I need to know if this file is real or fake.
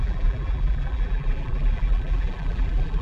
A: fake